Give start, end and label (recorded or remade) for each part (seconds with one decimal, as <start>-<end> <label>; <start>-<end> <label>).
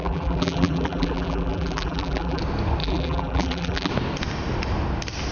0.0-2.4 remade; 2.4-2.8 recorded; 2.8-3.9 remade; 3.9-5.3 recorded